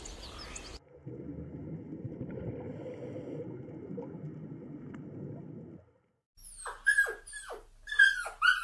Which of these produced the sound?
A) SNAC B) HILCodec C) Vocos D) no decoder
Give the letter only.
D